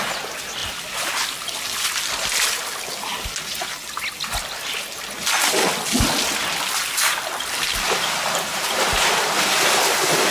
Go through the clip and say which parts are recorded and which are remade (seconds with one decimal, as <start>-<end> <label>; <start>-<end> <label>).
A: 0.0-8.5 recorded; 8.5-9.3 remade; 9.3-10.3 recorded